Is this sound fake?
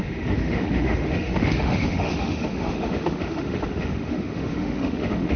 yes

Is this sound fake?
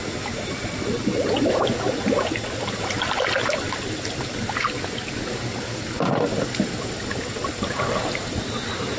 no